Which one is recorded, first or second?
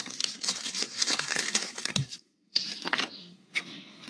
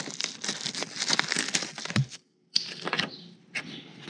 second